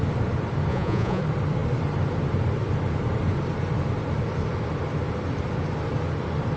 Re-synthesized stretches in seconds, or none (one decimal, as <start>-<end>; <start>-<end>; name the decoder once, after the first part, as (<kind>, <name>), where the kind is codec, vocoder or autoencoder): 0.7-1.2 (vocoder, Vocos)